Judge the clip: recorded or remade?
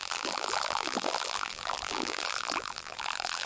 remade